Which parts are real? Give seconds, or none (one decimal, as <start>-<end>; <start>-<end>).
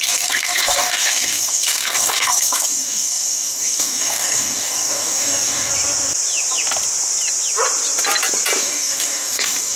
5.7-8.6